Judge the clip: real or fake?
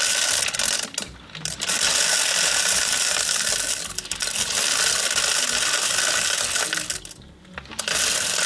real